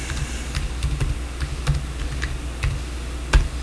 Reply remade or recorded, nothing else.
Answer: recorded